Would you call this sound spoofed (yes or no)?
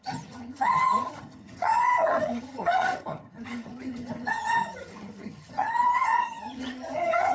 yes